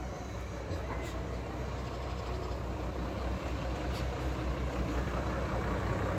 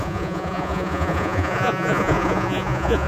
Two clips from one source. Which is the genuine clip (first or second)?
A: first